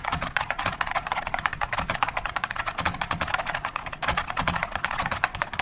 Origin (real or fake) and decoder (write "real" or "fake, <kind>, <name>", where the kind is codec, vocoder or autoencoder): fake, vocoder, Vocos